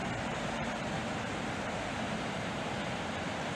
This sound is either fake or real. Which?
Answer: real